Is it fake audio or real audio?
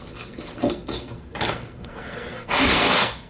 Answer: fake